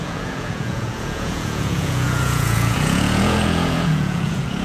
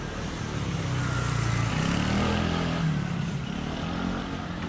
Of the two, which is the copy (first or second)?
first